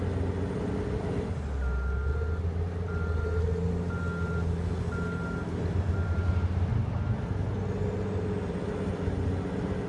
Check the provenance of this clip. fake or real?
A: real